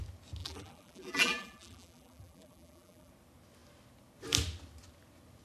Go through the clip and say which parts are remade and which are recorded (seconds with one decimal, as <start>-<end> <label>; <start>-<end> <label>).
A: 0.0-0.4 recorded; 0.4-3.1 remade; 3.1-5.4 recorded